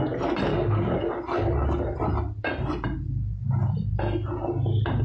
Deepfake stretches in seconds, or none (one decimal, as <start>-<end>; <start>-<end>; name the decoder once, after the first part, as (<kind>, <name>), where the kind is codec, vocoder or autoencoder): 0.5-1.1 (codec, DAC)